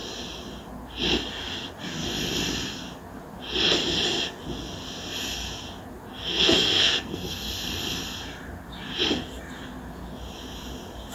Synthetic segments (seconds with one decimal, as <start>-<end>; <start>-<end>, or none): 6.1-7.4